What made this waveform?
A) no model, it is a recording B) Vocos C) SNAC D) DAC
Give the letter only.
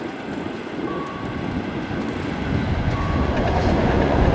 B